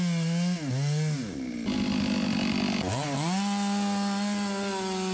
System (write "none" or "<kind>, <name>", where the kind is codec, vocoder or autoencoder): none